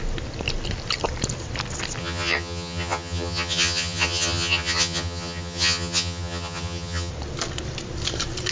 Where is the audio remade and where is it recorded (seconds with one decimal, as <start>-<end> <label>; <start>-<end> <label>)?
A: 0.0-2.0 recorded; 2.0-7.1 remade; 7.1-8.5 recorded